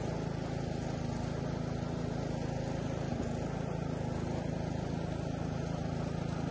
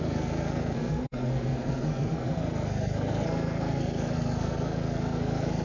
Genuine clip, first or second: first